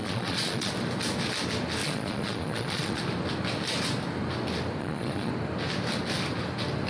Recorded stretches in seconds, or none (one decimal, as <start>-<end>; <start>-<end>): 0.7-1.8; 3.0-4.8; 5.3-6.9